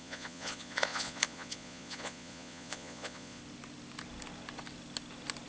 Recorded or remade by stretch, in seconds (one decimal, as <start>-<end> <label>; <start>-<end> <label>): 0.0-3.4 remade; 3.4-5.5 recorded